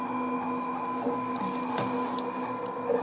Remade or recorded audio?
recorded